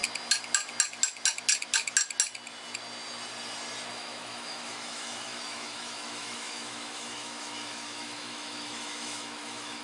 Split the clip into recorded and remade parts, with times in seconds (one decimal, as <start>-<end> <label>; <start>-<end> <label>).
0.0-3.9 recorded; 3.9-9.8 remade